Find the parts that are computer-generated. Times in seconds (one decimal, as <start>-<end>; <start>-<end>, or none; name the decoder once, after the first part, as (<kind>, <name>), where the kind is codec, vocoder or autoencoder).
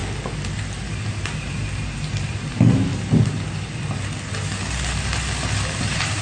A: 0.6-2.9 (vocoder, BigVGAN v2); 5.8-6.2